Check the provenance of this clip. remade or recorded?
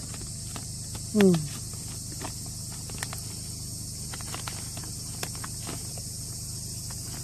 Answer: recorded